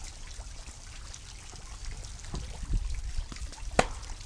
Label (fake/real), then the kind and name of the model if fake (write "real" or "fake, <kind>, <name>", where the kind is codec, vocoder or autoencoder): real